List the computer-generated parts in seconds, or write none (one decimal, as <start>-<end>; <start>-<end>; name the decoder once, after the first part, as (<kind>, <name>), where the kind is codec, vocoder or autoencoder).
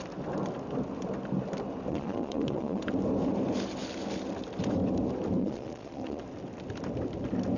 1.9-2.8 (vocoder, Vocos); 5.4-6.2